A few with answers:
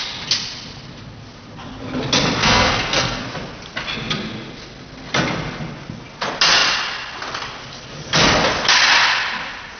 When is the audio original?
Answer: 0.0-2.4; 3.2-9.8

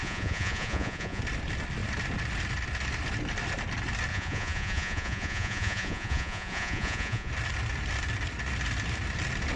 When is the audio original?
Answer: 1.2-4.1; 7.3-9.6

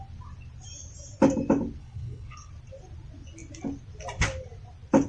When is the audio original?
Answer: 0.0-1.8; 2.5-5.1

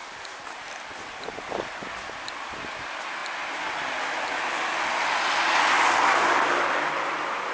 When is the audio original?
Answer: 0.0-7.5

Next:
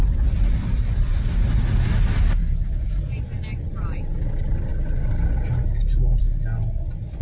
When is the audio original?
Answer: 0.0-2.4; 3.0-7.2

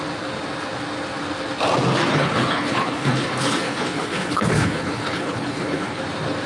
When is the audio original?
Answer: 0.0-2.1; 6.0-6.5

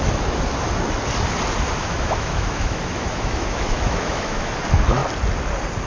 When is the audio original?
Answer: 0.0-1.8; 4.5-5.9